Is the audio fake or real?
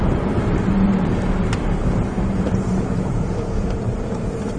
fake